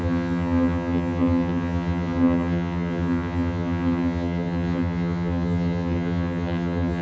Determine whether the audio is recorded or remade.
remade